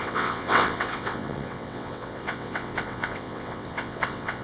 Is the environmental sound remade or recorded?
remade